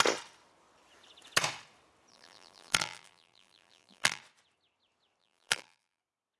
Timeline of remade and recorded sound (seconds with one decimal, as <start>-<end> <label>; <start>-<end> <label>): 0.0-2.1 recorded; 2.1-4.2 remade; 4.2-5.2 recorded; 5.2-6.0 remade; 6.0-6.4 recorded